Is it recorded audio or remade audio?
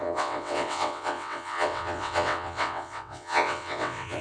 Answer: remade